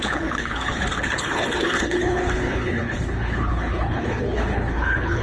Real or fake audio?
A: fake